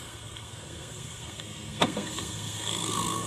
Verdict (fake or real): fake